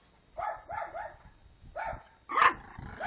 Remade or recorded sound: recorded